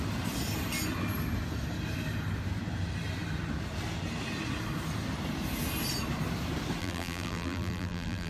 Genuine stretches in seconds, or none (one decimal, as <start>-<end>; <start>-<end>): 0.0-6.8